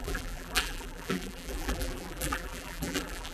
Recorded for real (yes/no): no